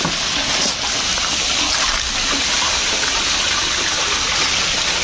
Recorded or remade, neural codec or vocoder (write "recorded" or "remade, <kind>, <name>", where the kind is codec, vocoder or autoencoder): recorded